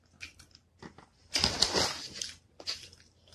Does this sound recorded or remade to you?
recorded